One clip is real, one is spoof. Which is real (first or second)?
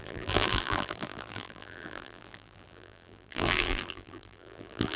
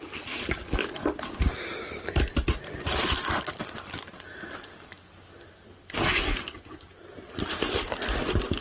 second